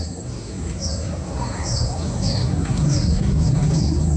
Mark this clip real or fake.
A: fake